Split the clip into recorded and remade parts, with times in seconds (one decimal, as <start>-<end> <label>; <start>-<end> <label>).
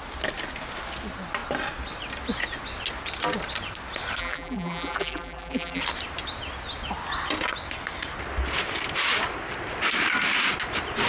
0.0-4.2 recorded; 4.2-5.8 remade; 5.8-11.1 recorded